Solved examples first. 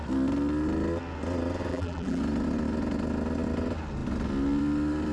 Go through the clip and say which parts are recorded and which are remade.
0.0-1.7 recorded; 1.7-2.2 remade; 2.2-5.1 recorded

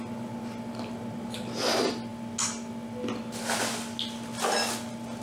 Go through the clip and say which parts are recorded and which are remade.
0.0-5.2 recorded